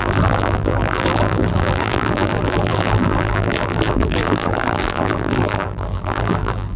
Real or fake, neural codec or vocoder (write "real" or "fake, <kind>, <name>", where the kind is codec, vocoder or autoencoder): fake, vocoder, BigVGAN v2